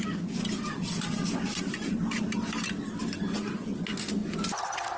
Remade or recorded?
recorded